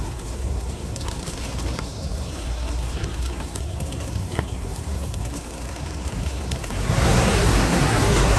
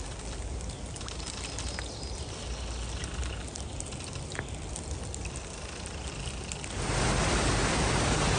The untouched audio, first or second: second